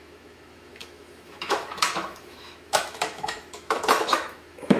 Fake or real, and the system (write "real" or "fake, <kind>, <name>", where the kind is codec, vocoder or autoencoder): fake, autoencoder, DAC-VAE